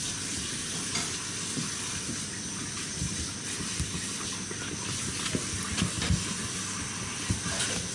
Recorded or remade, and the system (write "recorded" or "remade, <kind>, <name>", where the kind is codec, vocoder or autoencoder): recorded